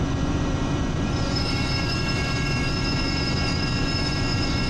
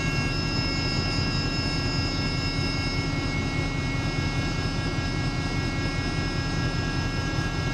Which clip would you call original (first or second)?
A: second